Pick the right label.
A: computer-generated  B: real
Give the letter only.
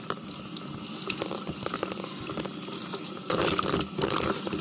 B